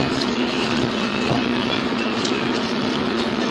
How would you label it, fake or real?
fake